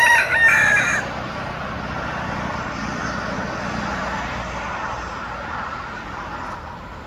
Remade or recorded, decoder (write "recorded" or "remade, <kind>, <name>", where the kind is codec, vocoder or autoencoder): recorded